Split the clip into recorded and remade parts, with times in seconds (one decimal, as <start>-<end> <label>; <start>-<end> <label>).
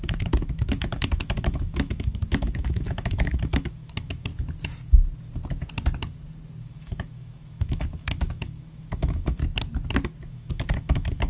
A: 0.0-4.3 remade; 4.3-6.6 recorded; 6.6-9.4 remade; 9.4-10.3 recorded; 10.3-11.3 remade